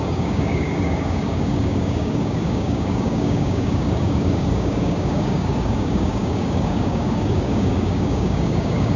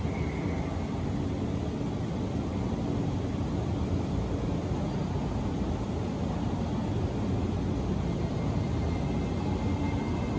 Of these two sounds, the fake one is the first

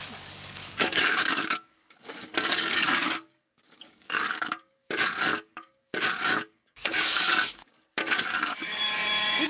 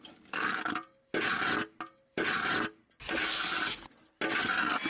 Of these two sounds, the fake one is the first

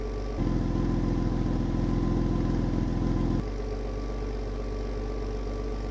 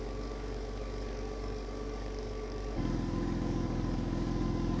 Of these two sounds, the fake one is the second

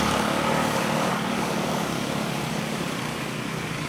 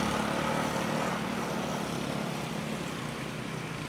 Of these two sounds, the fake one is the first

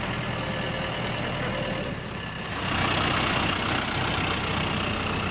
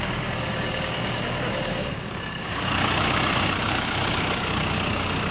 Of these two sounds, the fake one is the second